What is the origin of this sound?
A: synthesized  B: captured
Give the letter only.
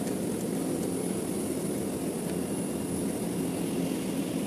B